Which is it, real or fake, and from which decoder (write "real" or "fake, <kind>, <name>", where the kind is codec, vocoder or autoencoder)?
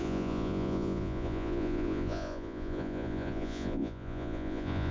fake, vocoder, Vocos